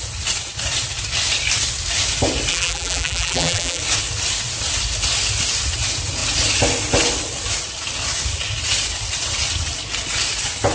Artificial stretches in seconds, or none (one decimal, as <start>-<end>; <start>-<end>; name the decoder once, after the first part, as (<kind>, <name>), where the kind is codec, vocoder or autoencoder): 2.5-3.8 (vocoder, BigVGAN v2)